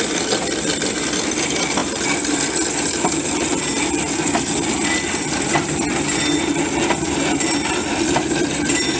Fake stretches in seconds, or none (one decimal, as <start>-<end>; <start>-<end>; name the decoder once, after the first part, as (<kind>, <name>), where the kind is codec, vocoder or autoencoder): 0.0-9.0 (vocoder, BigVGAN v2)

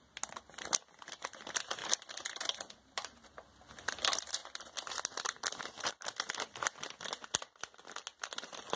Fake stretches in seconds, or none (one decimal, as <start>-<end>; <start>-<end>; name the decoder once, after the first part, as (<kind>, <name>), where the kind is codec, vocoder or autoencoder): 1.8-3.7 (vocoder, BigVGAN v2)

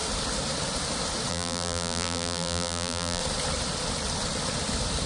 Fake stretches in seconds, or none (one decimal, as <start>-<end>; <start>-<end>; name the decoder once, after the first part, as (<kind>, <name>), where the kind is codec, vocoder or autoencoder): 1.3-3.2 (vocoder, BigVGAN v2)

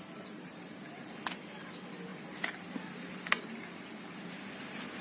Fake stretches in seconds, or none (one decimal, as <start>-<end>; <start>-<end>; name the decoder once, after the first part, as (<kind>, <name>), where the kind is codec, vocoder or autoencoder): none

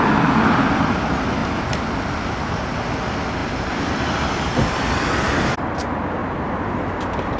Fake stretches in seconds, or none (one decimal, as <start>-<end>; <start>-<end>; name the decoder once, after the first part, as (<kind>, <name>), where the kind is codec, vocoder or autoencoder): 1.4-2.5 (vocoder, BigVGAN v2); 6.2-7.4